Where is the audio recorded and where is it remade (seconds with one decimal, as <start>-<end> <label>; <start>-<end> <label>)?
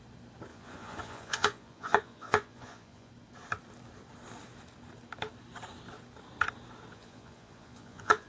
0.0-0.5 recorded; 0.5-3.1 remade; 3.1-6.9 recorded; 6.9-8.3 remade